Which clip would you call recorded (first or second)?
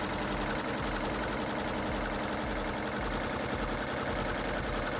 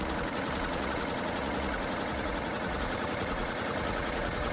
first